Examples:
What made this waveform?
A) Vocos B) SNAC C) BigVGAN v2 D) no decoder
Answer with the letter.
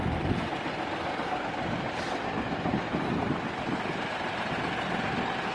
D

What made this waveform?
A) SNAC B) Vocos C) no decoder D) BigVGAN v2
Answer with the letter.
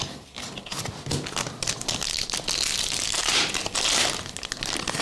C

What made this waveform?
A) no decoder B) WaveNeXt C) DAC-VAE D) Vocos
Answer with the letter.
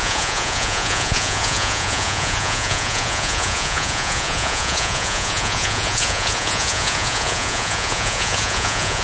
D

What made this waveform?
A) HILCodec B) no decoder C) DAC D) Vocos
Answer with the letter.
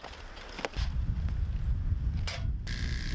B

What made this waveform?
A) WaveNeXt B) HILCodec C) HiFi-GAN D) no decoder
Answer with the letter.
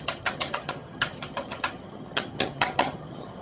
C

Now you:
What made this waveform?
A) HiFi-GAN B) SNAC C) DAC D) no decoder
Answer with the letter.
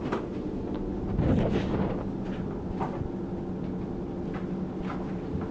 D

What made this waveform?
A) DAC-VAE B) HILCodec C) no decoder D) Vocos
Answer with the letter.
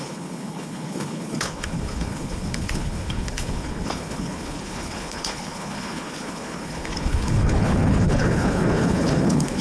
B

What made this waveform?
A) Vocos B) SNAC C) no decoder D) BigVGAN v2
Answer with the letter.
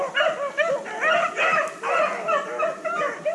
C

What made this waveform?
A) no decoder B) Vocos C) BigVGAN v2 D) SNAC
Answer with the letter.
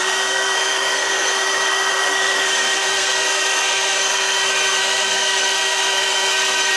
D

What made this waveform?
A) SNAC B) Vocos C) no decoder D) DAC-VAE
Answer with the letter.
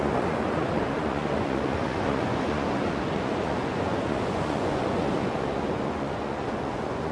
B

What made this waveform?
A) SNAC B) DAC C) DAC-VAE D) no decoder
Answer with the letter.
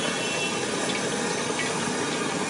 D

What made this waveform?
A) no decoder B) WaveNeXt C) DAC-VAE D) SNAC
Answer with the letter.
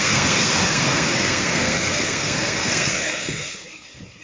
D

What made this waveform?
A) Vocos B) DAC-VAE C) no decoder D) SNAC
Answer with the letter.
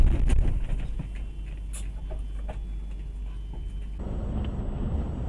C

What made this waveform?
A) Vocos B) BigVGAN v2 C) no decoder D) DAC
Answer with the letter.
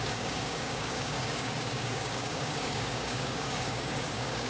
D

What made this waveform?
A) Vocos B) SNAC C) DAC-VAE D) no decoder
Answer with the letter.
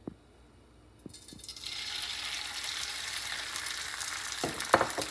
D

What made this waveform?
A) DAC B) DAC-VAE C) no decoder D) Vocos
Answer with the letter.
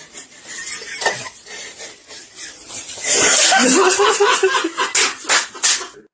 C